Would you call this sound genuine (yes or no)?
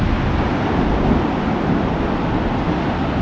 yes